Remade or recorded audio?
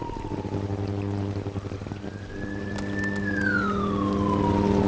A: recorded